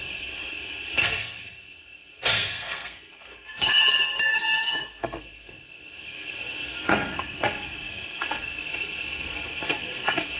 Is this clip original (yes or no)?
no